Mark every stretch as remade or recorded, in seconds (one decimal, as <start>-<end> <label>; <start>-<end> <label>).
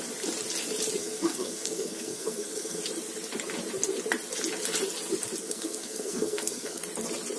0.0-1.0 recorded; 1.0-2.8 remade; 2.8-5.4 recorded; 5.4-6.8 remade; 6.8-7.4 recorded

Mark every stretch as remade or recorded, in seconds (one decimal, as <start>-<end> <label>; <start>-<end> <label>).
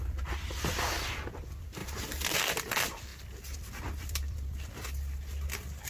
0.0-1.8 recorded; 1.8-2.4 remade; 2.4-5.9 recorded